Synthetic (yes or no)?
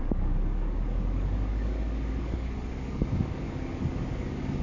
yes